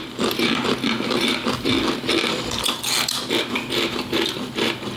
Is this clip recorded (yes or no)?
yes